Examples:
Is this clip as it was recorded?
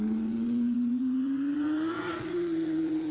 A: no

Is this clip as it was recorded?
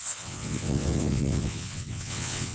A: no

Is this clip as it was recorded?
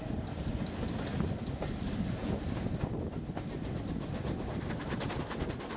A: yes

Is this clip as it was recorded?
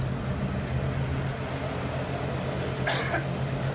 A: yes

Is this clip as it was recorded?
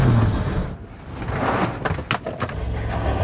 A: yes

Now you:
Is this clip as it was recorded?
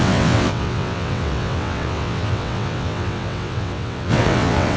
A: no